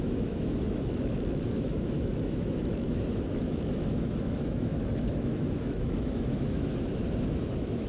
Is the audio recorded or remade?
remade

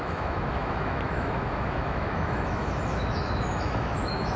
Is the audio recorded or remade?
remade